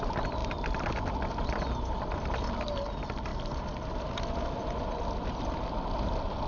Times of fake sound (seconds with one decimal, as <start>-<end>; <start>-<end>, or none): 0.4-1.2